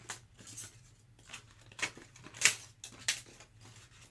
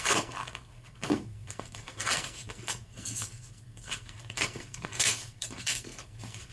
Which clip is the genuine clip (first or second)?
first